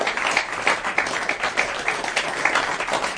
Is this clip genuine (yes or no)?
yes